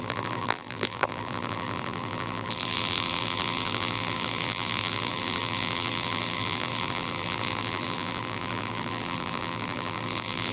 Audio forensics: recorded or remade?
remade